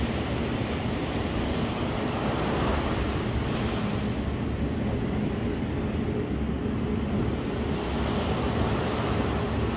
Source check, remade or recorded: recorded